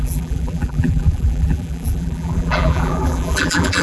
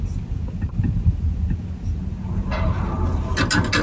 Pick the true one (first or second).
second